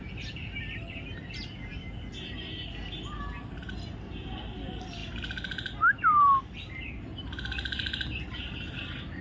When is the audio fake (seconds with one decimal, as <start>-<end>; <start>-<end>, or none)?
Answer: none